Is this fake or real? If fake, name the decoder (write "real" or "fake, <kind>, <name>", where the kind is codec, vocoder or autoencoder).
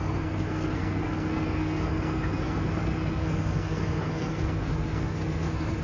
fake, codec, SNAC